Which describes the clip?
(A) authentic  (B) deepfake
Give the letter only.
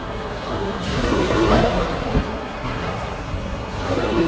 B